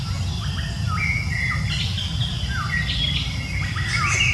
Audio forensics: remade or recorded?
recorded